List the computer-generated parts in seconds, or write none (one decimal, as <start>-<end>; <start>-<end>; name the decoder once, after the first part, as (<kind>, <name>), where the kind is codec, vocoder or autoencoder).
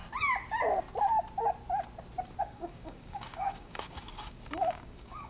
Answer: 2.4-5.3 (codec, DAC)